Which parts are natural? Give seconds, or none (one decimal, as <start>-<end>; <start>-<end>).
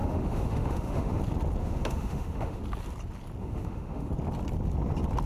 1.2-1.6; 2.6-3.4; 4.1-5.3